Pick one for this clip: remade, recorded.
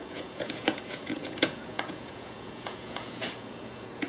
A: remade